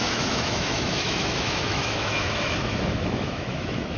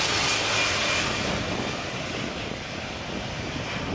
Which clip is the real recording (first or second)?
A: second